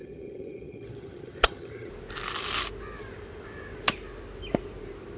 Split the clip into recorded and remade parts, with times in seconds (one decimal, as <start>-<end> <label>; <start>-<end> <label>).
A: 0.0-1.9 remade; 1.9-5.2 recorded